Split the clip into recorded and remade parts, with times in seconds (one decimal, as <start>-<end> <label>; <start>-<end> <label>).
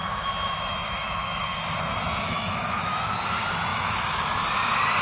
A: 0.0-3.0 remade; 3.0-3.7 recorded; 3.7-4.2 remade; 4.2-5.0 recorded